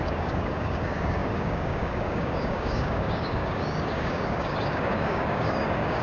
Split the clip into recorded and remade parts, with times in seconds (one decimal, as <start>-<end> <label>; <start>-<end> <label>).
0.0-6.0 remade